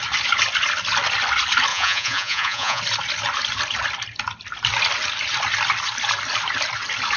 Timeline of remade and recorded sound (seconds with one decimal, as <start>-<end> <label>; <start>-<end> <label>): 0.0-1.7 recorded; 1.7-2.8 remade; 2.8-7.2 recorded